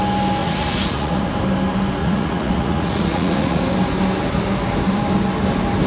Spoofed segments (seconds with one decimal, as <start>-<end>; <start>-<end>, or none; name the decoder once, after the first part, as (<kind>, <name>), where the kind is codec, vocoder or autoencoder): 0.4-1.3 (vocoder, Vocos); 2.0-3.6